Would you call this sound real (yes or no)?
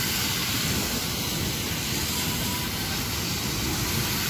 no